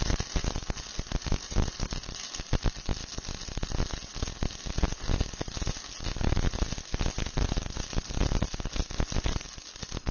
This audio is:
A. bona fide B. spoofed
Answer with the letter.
A